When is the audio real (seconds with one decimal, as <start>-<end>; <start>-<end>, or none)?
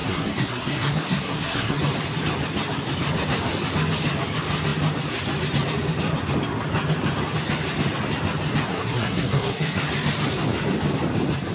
1.8-8.7; 9.8-11.5